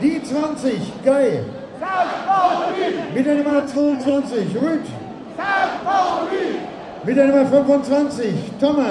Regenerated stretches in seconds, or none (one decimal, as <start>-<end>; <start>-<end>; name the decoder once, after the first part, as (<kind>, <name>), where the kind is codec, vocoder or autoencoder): 3.5-4.2 (codec, SNAC)